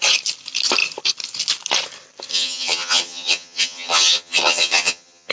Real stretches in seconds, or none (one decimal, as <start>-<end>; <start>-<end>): 0.0-2.3